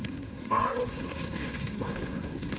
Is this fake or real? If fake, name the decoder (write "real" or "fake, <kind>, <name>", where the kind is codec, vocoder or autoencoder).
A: fake, codec, SNAC